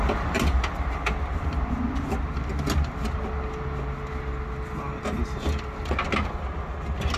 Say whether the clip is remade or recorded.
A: recorded